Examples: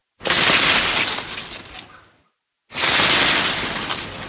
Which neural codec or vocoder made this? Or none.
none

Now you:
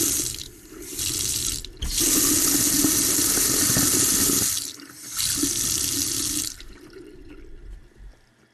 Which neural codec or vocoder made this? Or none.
none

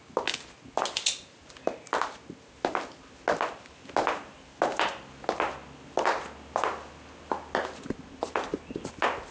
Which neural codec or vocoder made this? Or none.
none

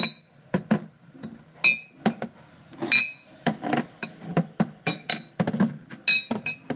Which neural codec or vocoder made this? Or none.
none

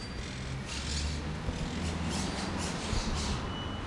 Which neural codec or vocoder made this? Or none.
none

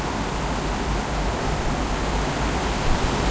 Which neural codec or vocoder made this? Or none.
none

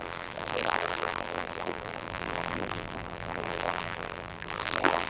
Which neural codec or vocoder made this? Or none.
vocoder, BigVGAN v2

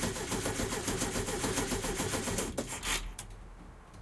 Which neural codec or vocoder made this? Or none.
none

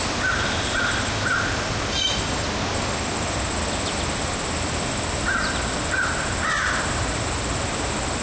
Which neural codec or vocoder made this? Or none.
none